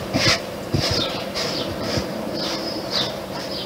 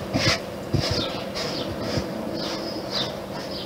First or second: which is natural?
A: second